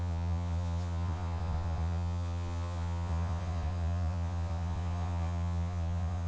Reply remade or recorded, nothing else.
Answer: remade